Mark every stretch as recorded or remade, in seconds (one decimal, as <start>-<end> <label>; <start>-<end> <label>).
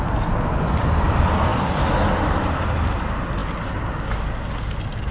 0.0-5.1 recorded